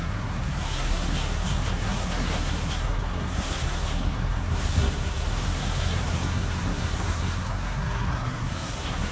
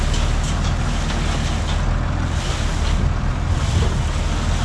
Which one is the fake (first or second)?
first